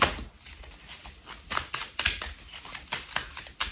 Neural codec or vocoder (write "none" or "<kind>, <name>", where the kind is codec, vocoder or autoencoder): none